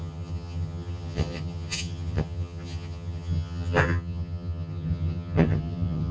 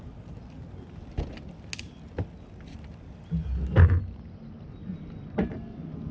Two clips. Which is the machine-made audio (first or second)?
first